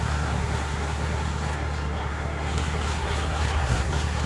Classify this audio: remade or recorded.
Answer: remade